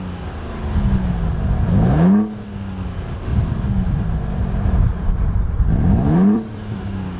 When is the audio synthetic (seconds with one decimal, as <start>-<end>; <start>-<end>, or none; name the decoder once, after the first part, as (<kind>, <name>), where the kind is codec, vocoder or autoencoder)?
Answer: 3.3-6.8 (vocoder, BigVGAN v2)